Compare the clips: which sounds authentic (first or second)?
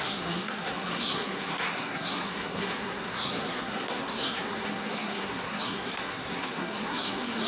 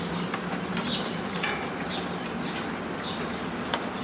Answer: second